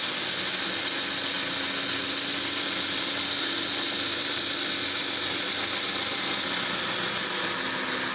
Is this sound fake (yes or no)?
no